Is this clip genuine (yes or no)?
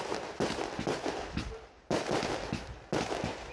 yes